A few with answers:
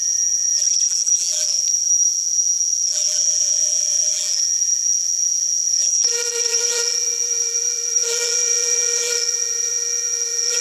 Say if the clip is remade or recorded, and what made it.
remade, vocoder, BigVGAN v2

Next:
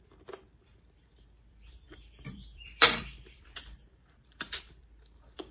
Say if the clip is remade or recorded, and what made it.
remade, vocoder, BigVGAN v2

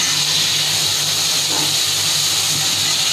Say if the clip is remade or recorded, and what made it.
recorded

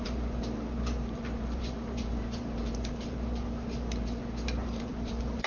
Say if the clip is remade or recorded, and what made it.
remade, vocoder, BigVGAN v2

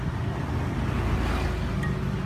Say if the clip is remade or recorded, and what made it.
recorded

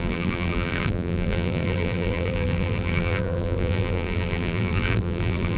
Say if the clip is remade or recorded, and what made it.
remade, vocoder, BigVGAN v2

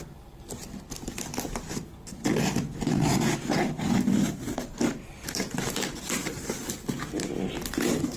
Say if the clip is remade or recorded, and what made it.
recorded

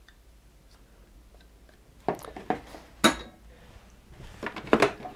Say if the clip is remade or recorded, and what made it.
recorded